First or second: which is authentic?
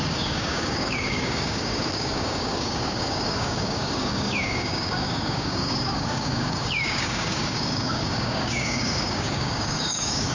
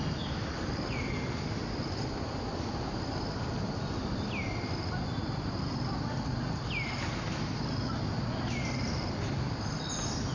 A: second